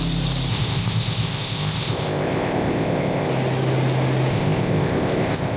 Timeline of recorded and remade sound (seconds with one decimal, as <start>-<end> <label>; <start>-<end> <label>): 0.0-0.5 recorded; 0.5-3.3 remade; 3.3-4.3 recorded; 4.3-5.6 remade

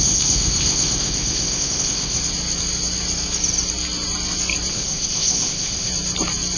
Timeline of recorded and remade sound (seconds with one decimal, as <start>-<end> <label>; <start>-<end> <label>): 0.0-2.2 remade; 2.2-4.7 recorded; 4.7-5.9 remade; 5.9-6.6 recorded

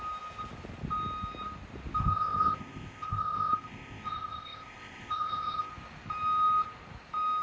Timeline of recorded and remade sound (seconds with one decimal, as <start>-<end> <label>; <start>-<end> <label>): 0.0-2.0 recorded; 2.0-5.7 remade; 5.7-7.4 recorded

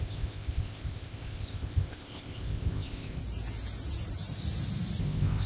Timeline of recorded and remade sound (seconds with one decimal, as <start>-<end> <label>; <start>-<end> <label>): 0.0-3.2 remade; 3.2-5.0 recorded; 5.0-5.5 remade

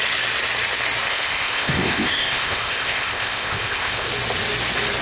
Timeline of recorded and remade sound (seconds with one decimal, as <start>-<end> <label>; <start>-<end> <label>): 0.0-1.1 recorded; 1.1-4.1 remade; 4.1-5.0 recorded